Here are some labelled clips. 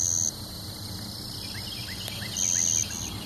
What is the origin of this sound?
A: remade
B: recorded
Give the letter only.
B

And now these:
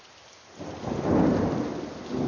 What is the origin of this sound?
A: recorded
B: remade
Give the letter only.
A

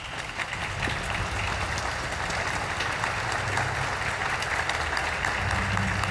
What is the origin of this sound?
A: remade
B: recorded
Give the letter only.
B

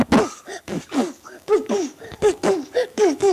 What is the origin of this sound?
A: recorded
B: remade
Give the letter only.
B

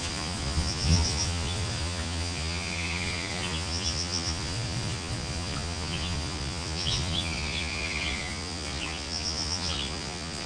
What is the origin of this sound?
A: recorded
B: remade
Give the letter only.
B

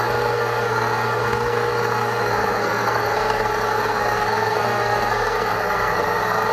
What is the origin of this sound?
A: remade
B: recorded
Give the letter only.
A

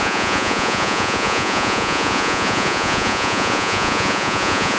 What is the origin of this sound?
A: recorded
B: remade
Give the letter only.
B